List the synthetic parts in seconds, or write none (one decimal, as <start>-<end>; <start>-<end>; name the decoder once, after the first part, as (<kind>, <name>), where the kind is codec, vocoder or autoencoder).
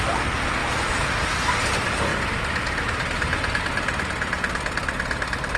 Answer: none